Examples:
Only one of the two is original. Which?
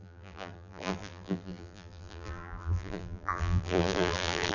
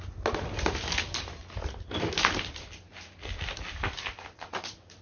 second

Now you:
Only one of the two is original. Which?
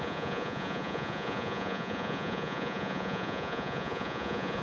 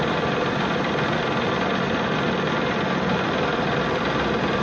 second